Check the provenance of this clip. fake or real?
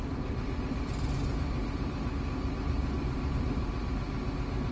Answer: real